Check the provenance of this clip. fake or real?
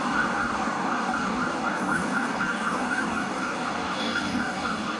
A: fake